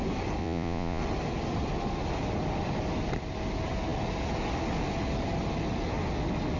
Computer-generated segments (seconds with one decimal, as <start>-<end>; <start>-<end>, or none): 0.4-1.0